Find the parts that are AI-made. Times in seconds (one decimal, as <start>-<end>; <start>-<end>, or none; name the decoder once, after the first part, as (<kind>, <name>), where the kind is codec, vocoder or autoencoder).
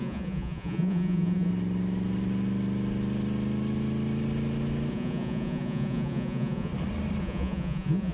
0.0-1.5 (vocoder, Vocos); 4.9-6.7; 7.2-8.1